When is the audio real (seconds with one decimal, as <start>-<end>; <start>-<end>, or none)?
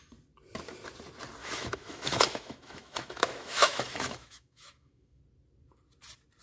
0.0-1.4; 5.2-6.4